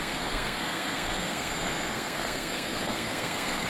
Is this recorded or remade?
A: remade